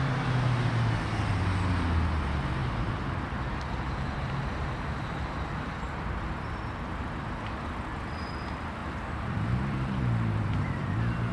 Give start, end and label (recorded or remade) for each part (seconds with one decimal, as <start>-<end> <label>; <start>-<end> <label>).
0.0-2.6 recorded; 2.6-6.2 remade; 6.2-8.8 recorded; 8.8-11.3 remade